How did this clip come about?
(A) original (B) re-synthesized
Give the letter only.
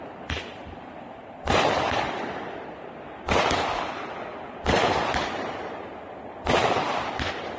A